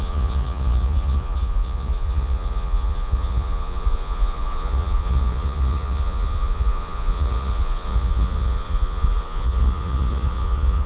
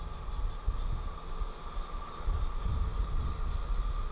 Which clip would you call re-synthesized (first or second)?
first